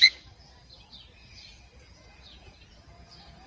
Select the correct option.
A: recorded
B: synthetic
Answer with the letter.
B